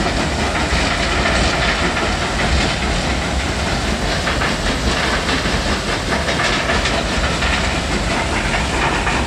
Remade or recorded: recorded